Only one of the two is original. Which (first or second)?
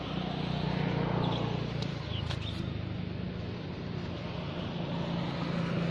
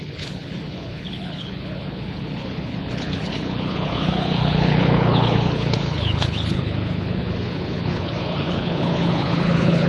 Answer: first